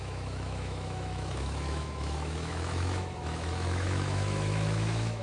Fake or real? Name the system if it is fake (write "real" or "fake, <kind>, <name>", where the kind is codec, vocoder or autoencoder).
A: fake, autoencoder, DAC-VAE